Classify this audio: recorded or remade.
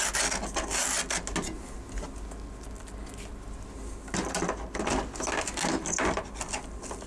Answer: recorded